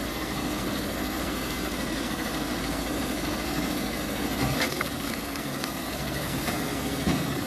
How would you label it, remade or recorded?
remade